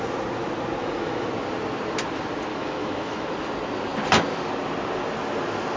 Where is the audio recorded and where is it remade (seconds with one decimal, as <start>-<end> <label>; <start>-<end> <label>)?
0.0-0.8 recorded; 0.8-1.3 remade; 1.3-2.5 recorded; 2.5-3.3 remade; 3.3-5.8 recorded